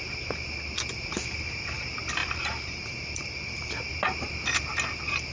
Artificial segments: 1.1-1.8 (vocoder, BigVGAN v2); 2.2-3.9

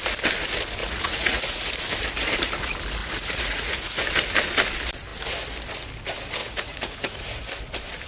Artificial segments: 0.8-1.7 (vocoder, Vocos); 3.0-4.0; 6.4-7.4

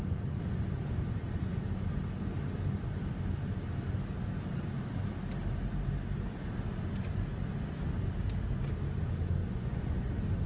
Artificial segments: 9.4-10.1 (vocoder, Vocos)

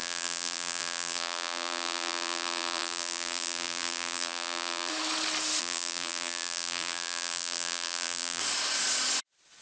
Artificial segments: 0.0-4.9 (vocoder, BigVGAN v2); 5.6-8.4

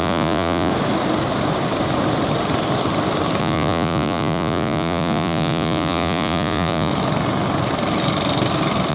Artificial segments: 0.0-0.7 (vocoder, Vocos); 3.4-6.9